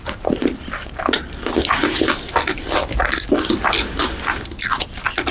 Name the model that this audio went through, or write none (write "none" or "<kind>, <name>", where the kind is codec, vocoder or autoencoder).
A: none